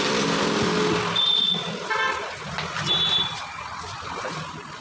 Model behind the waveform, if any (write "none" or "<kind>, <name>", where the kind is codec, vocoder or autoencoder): none